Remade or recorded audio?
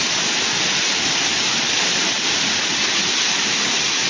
recorded